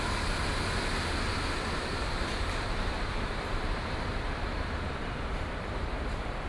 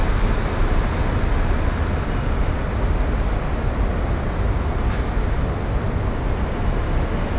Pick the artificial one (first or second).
first